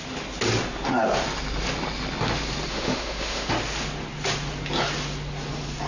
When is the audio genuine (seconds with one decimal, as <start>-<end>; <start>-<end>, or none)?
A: 0.0-2.7; 3.5-5.9